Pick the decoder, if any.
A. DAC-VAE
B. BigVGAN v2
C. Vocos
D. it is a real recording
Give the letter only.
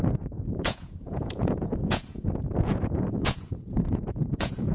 C